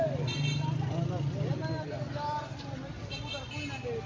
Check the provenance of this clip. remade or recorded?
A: recorded